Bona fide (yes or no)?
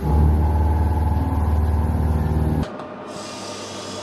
yes